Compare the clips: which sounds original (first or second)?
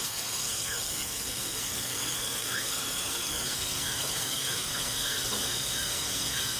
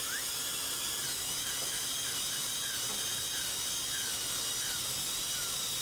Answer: second